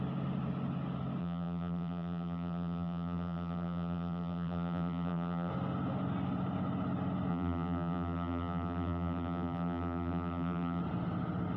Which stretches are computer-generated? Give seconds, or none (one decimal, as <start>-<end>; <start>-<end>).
1.2-5.5; 7.3-10.8